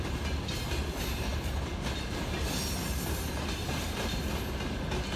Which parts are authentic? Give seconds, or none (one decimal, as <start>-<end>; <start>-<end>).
0.0-3.6; 4.4-5.2

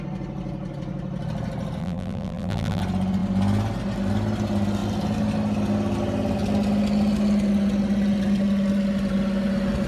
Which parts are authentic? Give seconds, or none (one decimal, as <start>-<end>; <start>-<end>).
0.0-1.8; 2.8-9.9